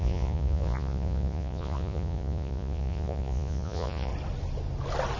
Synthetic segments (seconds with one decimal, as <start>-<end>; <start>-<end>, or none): 0.0-4.1

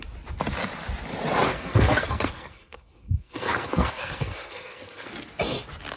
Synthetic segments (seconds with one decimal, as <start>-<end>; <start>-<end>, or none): 1.5-5.1

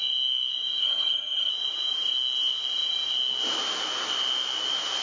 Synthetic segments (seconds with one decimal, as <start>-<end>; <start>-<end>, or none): 0.8-1.5

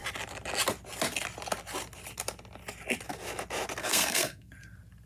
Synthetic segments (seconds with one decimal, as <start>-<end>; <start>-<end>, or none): 3.8-4.5

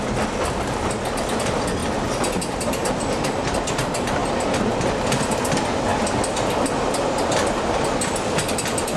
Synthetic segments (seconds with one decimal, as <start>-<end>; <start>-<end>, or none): none

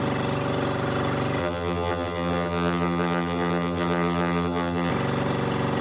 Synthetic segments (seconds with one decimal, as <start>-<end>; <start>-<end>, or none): 1.4-4.9

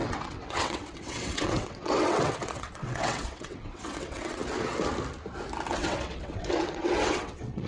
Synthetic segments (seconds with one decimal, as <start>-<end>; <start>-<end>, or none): 0.0-4.4; 5.7-7.7

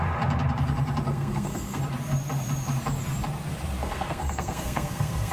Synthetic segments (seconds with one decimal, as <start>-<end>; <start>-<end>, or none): 1.1-1.8; 3.8-5.3